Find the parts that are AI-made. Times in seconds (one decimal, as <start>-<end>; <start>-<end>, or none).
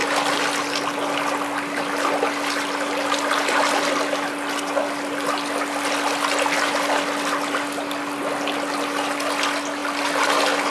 none